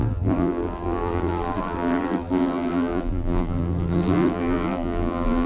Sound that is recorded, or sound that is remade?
remade